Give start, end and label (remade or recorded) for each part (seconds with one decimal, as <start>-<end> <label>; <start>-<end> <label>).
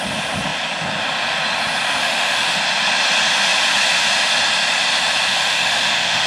0.0-2.0 recorded; 2.0-2.6 remade; 2.6-5.3 recorded; 5.3-6.3 remade